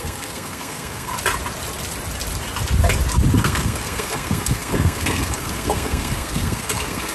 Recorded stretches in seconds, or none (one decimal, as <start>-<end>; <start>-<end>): 1.1-3.4